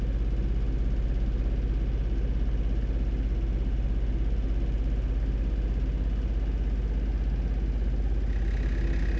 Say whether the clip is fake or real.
real